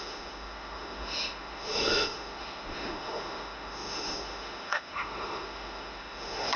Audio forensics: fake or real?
fake